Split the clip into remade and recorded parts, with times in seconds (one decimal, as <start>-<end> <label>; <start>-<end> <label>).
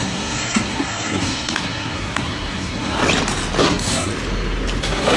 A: 0.0-3.0 remade; 3.0-3.6 recorded; 3.6-4.1 remade; 4.1-4.8 recorded; 4.8-5.2 remade